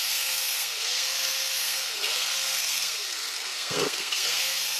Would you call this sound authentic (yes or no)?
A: no